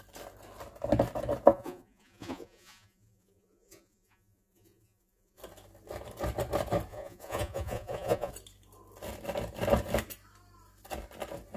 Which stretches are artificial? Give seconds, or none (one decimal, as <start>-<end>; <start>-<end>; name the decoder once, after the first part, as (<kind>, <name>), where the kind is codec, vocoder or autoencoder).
1.5-5.4 (vocoder, Vocos); 6.9-8.3